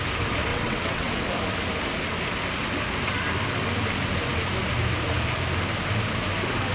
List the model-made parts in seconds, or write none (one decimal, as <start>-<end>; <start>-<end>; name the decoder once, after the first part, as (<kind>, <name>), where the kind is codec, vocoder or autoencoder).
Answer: 0.5-1.1 (vocoder, WaveNeXt)